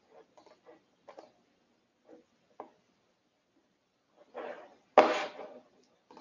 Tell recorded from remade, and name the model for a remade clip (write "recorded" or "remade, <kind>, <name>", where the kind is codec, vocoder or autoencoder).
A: recorded